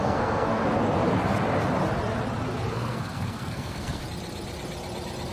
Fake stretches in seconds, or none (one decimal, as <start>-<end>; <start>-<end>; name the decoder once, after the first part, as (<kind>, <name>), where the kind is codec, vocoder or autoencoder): 0.0-0.6 (codec, SNAC); 2.7-4.0